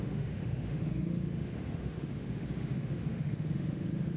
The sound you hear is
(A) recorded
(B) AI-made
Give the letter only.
B